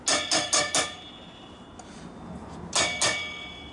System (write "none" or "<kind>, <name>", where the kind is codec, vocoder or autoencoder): none